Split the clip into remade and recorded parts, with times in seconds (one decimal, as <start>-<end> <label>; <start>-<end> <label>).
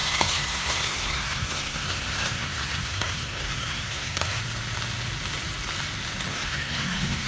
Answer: 0.0-4.4 remade; 4.4-6.3 recorded; 6.3-7.3 remade